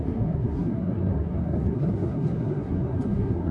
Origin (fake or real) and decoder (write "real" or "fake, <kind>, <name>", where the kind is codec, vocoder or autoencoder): fake, codec, SNAC